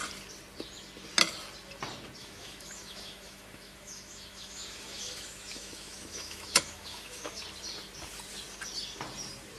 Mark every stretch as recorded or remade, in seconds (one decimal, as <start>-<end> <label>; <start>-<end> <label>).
0.0-2.2 recorded; 2.2-7.4 remade; 7.4-9.6 recorded